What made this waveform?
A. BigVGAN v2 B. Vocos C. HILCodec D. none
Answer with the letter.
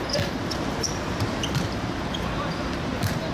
A